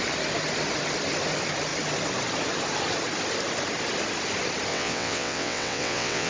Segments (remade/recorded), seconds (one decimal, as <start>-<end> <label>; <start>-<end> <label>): 0.0-4.7 recorded; 4.7-6.3 remade